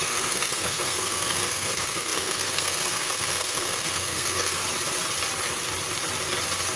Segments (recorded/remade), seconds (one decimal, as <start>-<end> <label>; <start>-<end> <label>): 0.0-4.6 remade; 4.6-6.8 recorded